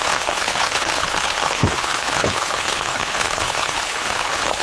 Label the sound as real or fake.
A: fake